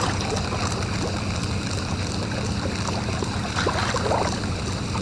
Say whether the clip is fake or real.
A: real